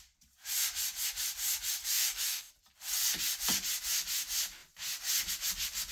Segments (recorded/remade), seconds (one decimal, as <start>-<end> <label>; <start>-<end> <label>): 0.0-1.8 recorded; 1.8-2.5 remade; 2.5-5.9 recorded